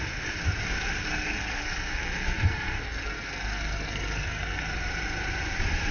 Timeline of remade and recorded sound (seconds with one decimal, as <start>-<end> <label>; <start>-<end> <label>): 0.0-1.1 recorded; 1.1-4.6 remade; 4.6-5.9 recorded